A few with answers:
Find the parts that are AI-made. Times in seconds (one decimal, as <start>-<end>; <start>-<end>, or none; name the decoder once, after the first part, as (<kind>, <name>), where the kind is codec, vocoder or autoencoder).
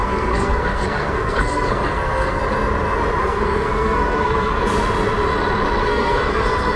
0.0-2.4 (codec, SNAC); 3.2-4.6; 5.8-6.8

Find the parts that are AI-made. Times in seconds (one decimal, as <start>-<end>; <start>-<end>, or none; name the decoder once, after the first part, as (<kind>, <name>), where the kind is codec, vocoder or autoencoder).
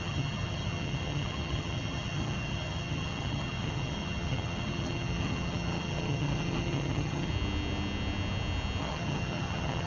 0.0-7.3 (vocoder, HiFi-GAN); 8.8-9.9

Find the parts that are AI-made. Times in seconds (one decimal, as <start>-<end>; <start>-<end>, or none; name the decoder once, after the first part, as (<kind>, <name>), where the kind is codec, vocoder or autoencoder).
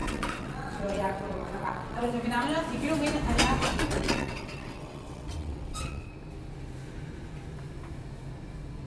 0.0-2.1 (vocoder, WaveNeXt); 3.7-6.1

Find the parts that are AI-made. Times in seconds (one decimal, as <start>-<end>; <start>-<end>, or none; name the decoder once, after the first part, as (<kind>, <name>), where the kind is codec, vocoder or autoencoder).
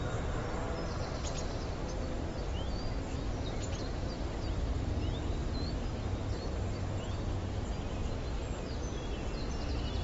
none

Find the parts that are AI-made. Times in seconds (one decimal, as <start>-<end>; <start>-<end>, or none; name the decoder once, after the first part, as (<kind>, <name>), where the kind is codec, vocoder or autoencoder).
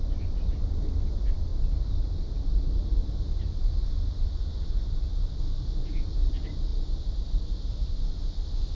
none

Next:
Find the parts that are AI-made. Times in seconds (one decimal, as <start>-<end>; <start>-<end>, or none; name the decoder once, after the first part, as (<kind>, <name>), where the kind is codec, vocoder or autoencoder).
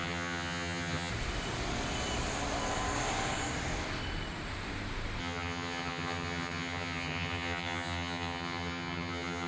0.0-1.1 (vocoder, HiFi-GAN); 5.2-9.5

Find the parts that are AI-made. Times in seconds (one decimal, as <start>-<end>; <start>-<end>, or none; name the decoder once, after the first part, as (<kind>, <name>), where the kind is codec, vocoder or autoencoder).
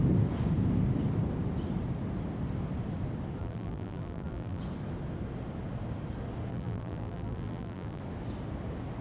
3.4-4.6 (vocoder, BigVGAN v2); 6.5-8.0